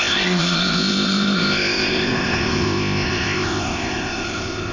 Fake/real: fake